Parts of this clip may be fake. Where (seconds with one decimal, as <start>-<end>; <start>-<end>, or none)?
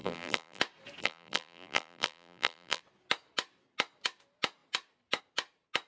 0.0-0.6; 1.0-2.8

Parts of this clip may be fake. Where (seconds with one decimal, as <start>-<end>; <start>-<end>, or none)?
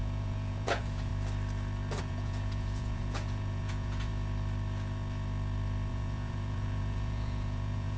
0.0-1.1; 2.0-4.1; 5.9-8.0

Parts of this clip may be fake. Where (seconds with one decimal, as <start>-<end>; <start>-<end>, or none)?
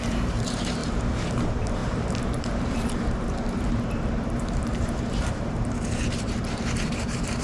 0.0-7.4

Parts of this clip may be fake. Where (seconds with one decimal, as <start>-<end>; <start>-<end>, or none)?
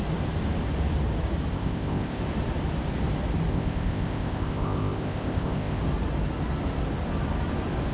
1.5-2.2; 3.5-5.8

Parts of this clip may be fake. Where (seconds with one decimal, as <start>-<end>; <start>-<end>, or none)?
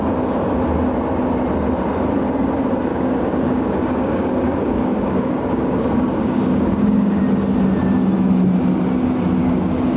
2.9-7.2; 9.4-10.0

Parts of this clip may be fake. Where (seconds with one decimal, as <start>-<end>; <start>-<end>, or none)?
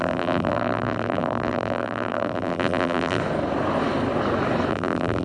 0.0-3.2; 4.7-5.2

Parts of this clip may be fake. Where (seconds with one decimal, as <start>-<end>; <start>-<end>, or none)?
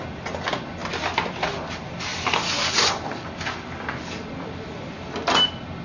none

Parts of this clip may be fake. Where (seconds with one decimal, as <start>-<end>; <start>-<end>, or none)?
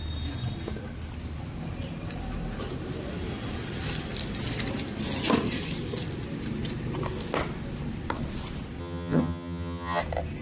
8.8-10.0